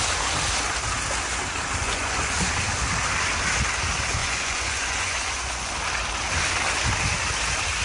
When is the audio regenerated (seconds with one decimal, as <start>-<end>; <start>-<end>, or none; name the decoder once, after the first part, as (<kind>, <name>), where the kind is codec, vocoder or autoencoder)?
1.8-2.5 (vocoder, Vocos); 4.2-5.7